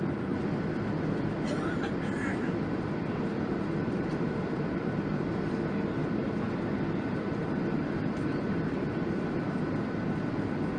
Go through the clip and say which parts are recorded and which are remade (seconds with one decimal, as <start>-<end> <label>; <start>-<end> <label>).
0.0-3.8 recorded; 3.8-5.1 remade; 5.1-10.8 recorded